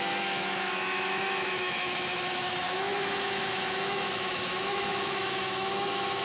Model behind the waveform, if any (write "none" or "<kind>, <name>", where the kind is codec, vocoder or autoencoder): autoencoder, DAC-VAE